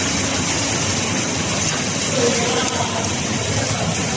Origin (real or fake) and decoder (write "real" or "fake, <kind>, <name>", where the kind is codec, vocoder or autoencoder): real